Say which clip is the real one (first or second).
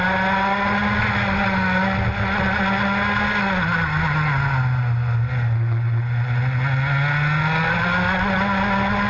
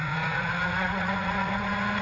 first